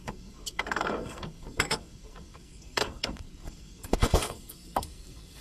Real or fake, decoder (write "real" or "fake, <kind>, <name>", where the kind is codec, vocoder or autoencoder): fake, codec, SNAC